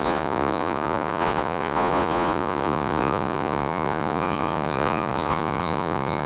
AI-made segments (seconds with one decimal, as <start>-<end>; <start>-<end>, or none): 0.0-6.3